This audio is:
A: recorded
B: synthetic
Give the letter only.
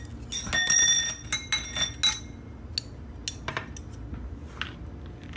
A